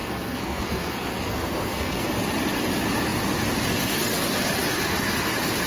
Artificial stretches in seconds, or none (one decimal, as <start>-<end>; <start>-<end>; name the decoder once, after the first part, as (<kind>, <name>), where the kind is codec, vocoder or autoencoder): 0.0-2.1 (codec, SNAC)

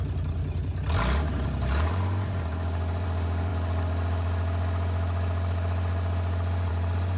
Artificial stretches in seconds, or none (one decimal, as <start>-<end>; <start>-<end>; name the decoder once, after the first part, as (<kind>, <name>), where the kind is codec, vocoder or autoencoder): 0.0-0.7 (vocoder, BigVGAN v2); 1.6-3.5; 6.7-7.2

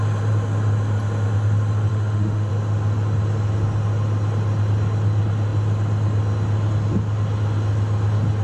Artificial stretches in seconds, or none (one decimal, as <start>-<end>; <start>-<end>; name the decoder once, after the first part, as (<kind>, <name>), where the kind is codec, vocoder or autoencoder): 1.9-2.5 (autoencoder, DAC-VAE)

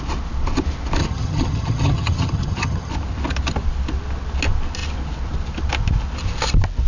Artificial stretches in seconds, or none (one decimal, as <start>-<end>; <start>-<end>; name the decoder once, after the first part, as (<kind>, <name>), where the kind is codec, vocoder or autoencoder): 1.0-2.9 (vocoder, HiFi-GAN)

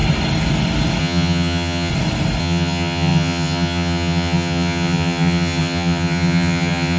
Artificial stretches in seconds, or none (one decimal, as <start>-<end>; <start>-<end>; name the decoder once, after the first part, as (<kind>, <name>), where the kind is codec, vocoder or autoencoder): 1.0-1.9 (vocoder, HiFi-GAN); 2.4-7.0

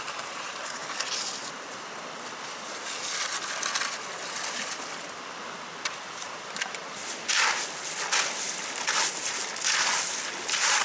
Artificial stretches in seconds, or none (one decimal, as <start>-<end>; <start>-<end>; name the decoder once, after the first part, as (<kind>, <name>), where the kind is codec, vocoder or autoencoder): 0.0-0.8 (vocoder, BigVGAN v2); 5.9-6.8; 10.4-10.8